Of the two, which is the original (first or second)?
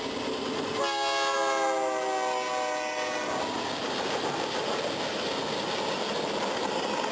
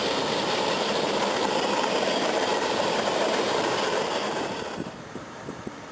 first